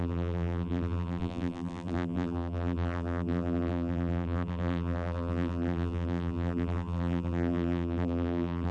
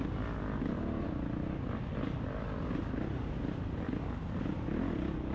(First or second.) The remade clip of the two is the first